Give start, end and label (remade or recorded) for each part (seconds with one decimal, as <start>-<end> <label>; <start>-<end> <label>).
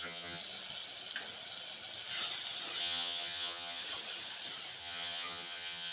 0.0-0.4 remade; 0.4-2.8 recorded; 2.8-3.8 remade; 3.8-4.8 recorded; 4.8-5.9 remade